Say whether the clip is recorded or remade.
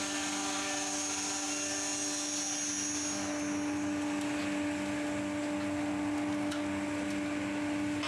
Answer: recorded